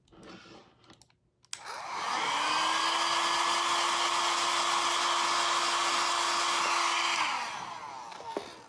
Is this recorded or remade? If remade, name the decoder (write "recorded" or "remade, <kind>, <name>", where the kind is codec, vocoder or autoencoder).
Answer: recorded